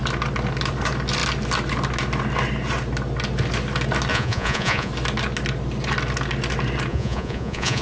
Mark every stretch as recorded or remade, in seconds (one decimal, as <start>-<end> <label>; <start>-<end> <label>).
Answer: 0.0-4.1 recorded; 4.1-4.9 remade; 4.9-6.9 recorded; 6.9-7.8 remade